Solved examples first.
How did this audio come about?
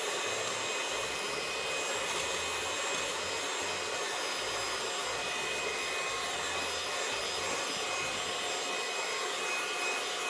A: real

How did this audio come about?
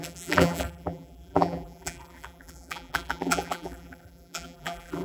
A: fake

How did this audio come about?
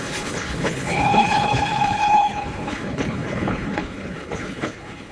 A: fake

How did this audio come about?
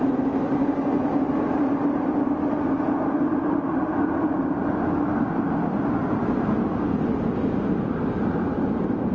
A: real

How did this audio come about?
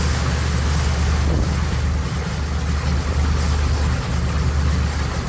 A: real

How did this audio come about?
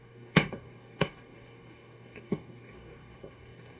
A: fake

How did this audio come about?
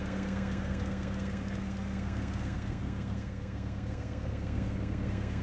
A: fake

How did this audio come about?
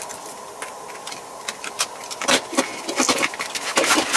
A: real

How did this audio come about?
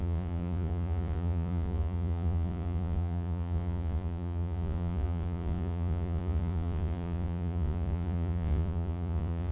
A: fake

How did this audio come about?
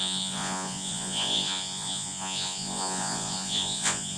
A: fake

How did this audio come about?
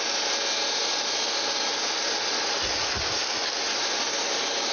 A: real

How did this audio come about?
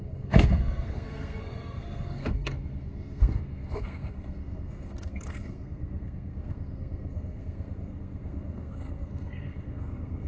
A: fake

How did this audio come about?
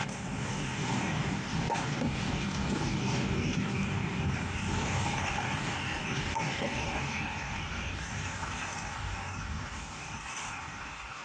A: fake